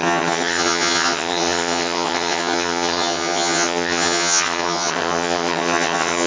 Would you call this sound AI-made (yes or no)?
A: yes